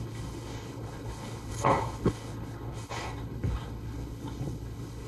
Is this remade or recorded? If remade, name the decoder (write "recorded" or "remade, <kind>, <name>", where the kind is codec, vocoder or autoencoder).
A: remade, codec, HILCodec